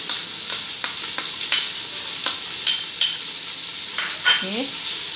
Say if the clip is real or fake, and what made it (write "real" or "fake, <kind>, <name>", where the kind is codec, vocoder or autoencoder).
real